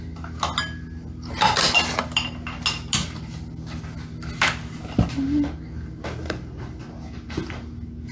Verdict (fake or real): real